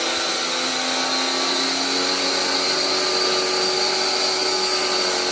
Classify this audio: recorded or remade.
recorded